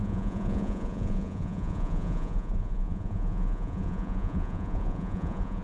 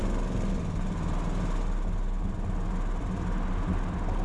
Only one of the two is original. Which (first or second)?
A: second